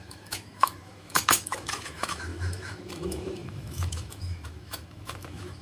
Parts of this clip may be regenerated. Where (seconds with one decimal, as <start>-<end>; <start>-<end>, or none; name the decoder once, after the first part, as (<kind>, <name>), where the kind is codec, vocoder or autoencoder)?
0.0-5.6 (autoencoder, DAC-VAE)